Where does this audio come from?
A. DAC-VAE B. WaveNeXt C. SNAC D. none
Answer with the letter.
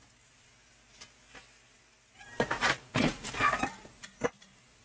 D